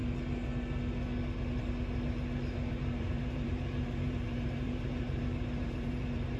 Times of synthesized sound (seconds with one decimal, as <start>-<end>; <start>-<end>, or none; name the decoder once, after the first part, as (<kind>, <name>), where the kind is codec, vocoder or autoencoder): 2.7-6.4 (vocoder, BigVGAN v2)